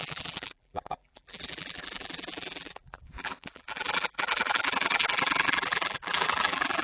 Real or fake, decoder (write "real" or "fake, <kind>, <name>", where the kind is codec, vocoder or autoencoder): fake, vocoder, BigVGAN v2